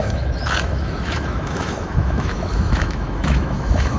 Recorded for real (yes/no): no